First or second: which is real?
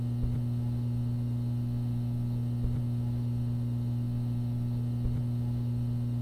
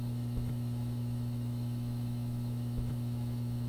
first